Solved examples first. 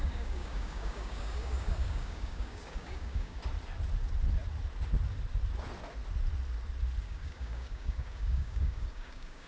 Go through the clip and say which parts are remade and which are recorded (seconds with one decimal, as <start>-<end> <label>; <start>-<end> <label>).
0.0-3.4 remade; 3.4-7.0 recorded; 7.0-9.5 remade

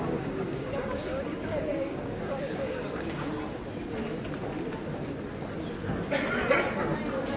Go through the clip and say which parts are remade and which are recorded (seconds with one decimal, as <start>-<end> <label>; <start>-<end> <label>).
0.0-3.3 remade; 3.3-7.4 recorded

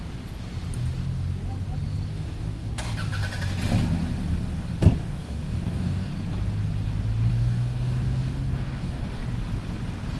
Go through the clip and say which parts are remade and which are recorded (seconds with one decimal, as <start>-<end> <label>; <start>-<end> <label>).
0.0-2.1 recorded; 2.1-2.7 remade; 2.7-5.0 recorded; 5.0-6.1 remade; 6.1-7.3 recorded; 7.3-9.2 remade; 9.2-10.2 recorded

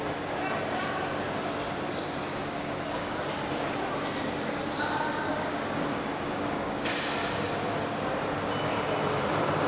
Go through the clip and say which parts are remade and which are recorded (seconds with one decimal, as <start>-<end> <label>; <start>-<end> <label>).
0.0-2.3 recorded; 2.3-3.3 remade; 3.3-5.3 recorded; 5.3-6.8 remade; 6.8-9.7 recorded

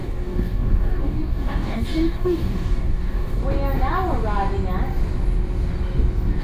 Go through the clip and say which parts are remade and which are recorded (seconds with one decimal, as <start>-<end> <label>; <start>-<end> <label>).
0.0-3.4 remade; 3.4-6.4 recorded